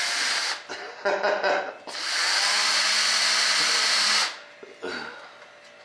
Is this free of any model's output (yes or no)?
yes